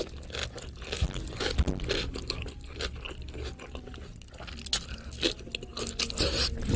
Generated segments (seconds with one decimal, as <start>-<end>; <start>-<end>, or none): none

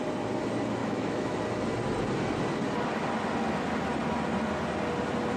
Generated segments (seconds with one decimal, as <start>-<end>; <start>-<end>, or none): 0.8-1.4

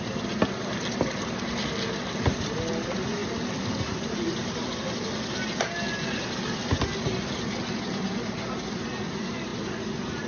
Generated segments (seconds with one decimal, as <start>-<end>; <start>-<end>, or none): none

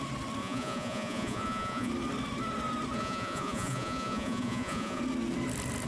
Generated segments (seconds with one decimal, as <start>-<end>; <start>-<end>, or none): 0.4-1.9; 3.0-5.0